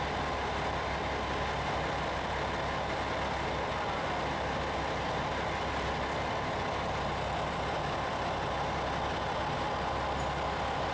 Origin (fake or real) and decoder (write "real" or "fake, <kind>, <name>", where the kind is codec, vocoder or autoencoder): real